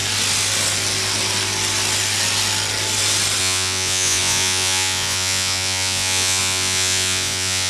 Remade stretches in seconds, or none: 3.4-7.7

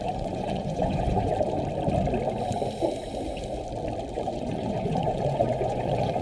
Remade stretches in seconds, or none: 0.0-1.3; 4.1-6.2

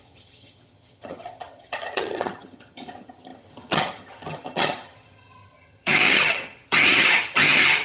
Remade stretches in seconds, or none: 0.0-7.8

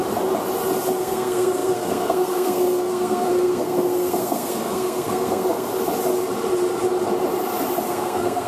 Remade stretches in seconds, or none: 1.0-5.7; 7.9-8.5

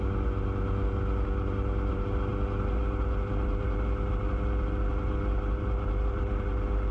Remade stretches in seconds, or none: none